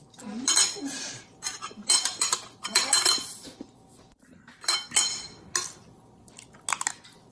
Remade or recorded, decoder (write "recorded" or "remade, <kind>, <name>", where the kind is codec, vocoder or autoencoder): recorded